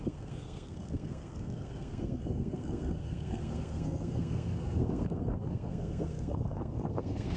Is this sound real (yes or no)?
no